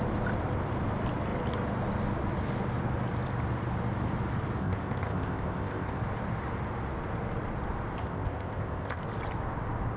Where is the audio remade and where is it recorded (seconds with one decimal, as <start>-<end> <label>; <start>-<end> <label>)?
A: 0.0-4.6 recorded; 4.6-6.0 remade; 6.0-8.0 recorded; 8.0-9.0 remade; 9.0-10.0 recorded